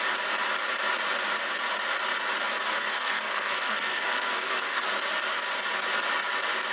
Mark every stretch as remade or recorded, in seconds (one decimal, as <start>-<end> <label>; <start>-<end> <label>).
0.0-2.7 recorded; 2.7-4.8 remade; 4.8-6.7 recorded